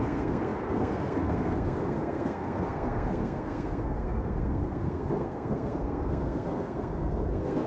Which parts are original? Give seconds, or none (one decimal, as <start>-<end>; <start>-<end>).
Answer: none